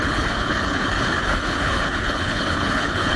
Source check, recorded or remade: remade